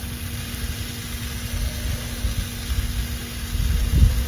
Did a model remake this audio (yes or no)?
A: no